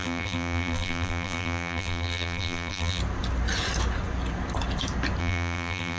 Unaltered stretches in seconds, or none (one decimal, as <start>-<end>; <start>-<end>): 3.0-5.2